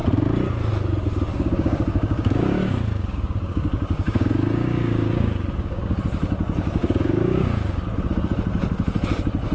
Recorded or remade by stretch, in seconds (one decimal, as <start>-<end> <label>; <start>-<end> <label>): 0.0-1.3 recorded; 1.3-6.0 remade; 6.0-6.8 recorded; 6.8-7.8 remade; 7.8-9.5 recorded